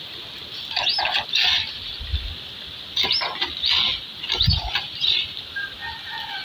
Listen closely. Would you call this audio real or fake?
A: real